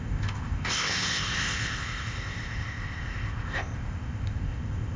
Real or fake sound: fake